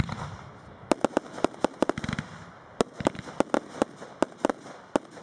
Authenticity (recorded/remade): recorded